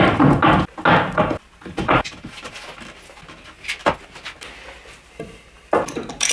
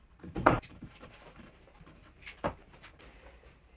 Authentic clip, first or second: first